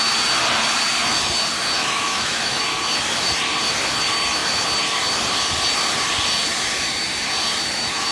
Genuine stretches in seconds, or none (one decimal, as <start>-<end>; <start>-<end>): 0.0-1.8; 2.6-8.1